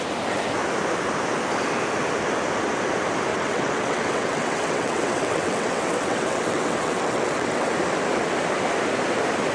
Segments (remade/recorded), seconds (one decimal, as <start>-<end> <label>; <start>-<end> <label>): 0.0-3.3 recorded; 3.3-7.7 remade; 7.7-9.5 recorded